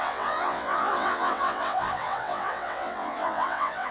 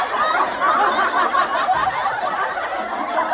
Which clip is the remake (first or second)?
first